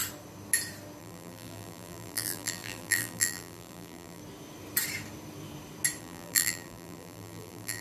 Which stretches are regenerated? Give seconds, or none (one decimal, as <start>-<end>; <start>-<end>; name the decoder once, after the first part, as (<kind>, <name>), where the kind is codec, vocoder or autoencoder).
1.0-4.2 (vocoder, BigVGAN v2); 6.0-7.8